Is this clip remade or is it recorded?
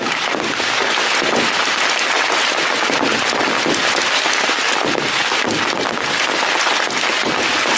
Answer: recorded